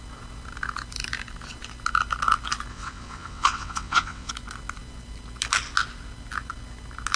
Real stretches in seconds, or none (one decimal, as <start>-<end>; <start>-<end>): 0.0-2.7; 4.3-7.2